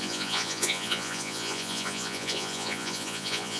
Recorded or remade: remade